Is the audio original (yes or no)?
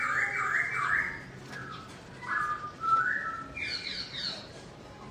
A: yes